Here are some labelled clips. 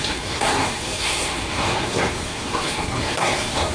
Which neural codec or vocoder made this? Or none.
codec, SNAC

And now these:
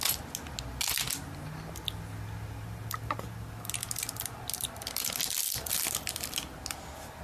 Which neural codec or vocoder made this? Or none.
none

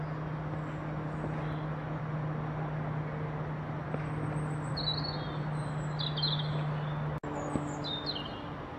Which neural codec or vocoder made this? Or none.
none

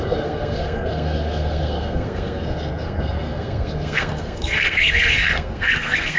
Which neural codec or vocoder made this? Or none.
codec, SNAC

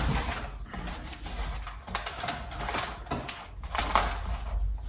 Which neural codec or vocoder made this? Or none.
none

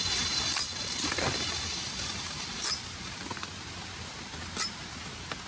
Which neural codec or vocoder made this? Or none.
none